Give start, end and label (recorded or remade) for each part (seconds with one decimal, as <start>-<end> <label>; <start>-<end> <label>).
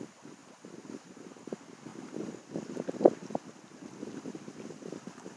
0.0-1.9 recorded; 1.9-5.4 remade